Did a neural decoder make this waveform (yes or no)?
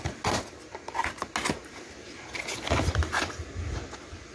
no